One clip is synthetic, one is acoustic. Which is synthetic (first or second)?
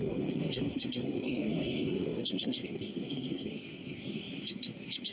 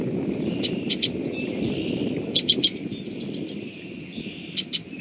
first